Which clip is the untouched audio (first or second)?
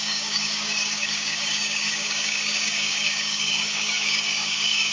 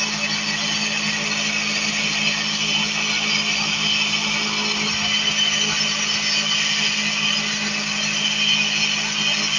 second